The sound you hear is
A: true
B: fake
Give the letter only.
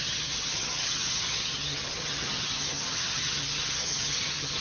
B